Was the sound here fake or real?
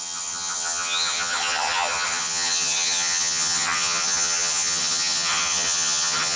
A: fake